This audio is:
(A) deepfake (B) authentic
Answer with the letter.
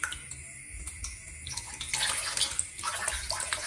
B